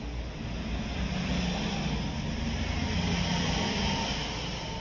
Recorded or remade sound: recorded